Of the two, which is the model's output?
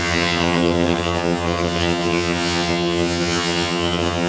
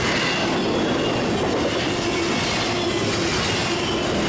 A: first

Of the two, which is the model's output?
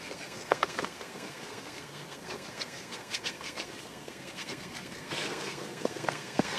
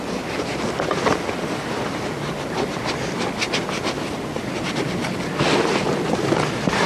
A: first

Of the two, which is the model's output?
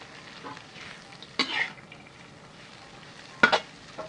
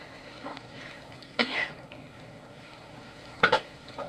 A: second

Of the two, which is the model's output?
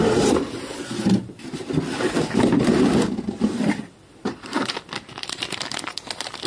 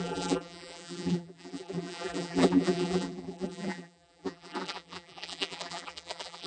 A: second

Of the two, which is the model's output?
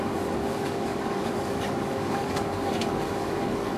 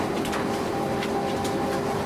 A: first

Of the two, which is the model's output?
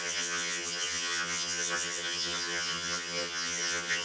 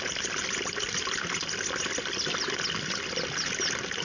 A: first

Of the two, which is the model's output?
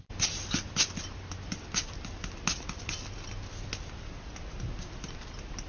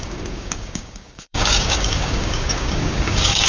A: second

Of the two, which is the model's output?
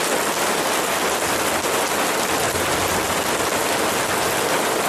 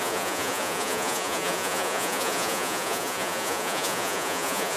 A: second